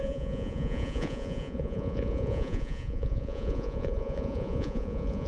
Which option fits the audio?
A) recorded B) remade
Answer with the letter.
B